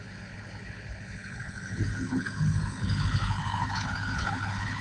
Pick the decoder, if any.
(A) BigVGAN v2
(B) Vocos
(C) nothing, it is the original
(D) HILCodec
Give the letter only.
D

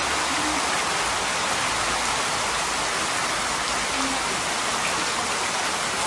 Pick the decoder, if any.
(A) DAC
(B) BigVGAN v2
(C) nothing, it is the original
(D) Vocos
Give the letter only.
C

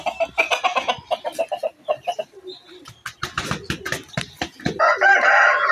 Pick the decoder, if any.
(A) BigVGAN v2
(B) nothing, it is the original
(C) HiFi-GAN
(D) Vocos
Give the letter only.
B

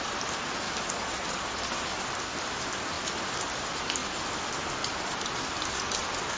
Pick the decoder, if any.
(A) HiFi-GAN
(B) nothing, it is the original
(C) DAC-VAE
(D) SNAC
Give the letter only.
B